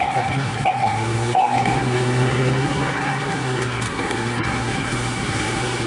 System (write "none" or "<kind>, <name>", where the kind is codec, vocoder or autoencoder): codec, SNAC